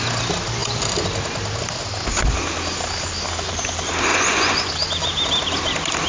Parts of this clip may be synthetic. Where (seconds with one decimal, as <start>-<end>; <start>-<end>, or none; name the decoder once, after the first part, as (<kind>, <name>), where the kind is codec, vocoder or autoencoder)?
4.1-4.7 (vocoder, Vocos)